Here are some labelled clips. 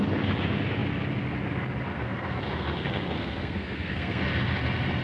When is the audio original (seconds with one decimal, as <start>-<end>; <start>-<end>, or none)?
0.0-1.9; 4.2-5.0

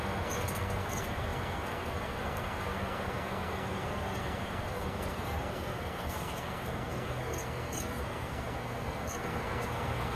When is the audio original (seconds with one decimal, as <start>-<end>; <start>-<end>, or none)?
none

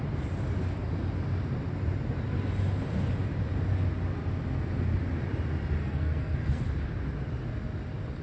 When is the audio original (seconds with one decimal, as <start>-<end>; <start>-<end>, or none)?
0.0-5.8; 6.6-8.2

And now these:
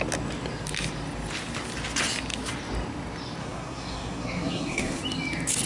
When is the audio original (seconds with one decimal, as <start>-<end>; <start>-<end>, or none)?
0.0-3.4; 5.0-5.7